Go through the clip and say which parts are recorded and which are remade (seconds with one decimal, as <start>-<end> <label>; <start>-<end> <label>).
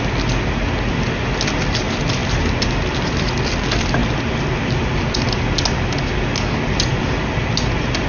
0.0-8.1 recorded